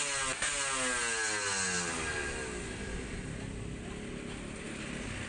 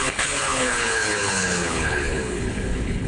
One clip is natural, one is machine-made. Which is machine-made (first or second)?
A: second